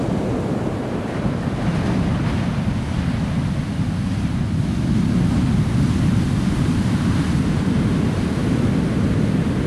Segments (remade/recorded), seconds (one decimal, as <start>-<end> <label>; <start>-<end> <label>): 0.0-8.4 remade; 8.4-9.7 recorded